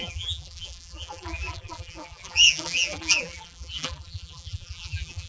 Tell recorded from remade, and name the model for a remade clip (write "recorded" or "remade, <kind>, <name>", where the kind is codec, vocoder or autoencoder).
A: remade, vocoder, BigVGAN v2